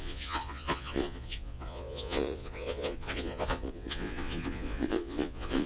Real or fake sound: fake